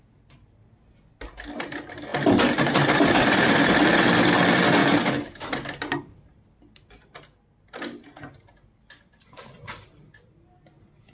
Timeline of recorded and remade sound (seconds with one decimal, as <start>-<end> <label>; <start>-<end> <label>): 0.0-2.1 recorded; 2.1-3.9 remade; 3.9-4.8 recorded; 4.8-6.5 remade; 6.5-11.1 recorded